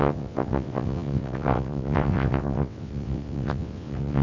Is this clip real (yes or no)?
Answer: no